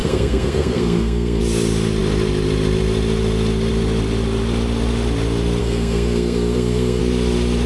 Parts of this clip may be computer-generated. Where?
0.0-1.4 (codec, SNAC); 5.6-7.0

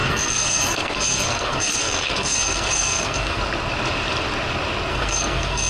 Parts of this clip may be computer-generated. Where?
0.0-3.4 (codec, SNAC); 4.9-5.7